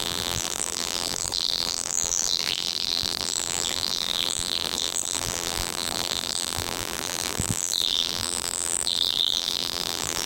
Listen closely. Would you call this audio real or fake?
fake